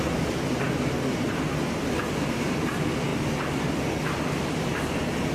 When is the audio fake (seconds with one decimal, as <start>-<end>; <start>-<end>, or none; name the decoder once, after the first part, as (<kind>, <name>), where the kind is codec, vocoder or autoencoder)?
none